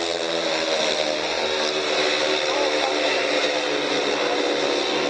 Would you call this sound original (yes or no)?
yes